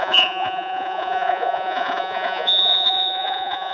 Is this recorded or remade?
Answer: remade